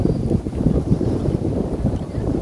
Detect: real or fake fake